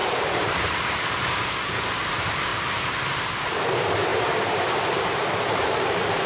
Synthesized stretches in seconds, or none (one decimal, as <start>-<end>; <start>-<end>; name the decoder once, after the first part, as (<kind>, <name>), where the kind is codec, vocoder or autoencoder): 0.0-2.5 (vocoder, BigVGAN v2); 3.5-6.3